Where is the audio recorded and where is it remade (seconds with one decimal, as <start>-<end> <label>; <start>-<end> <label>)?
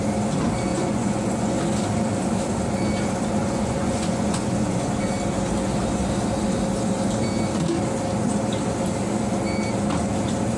0.0-0.7 recorded; 0.7-1.6 remade; 1.6-3.4 recorded; 3.4-5.0 remade; 5.0-10.6 recorded